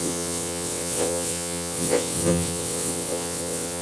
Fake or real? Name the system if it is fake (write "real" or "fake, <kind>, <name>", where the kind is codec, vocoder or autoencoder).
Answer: fake, vocoder, WaveNeXt